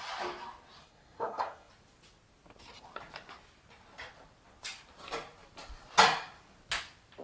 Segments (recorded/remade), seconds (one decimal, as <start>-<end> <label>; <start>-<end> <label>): 0.0-0.8 recorded; 0.8-1.7 remade; 1.7-7.2 recorded